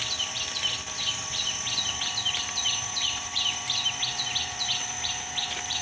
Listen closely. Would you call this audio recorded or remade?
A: remade